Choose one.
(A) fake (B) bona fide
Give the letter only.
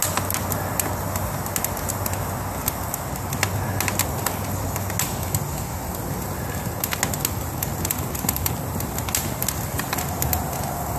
B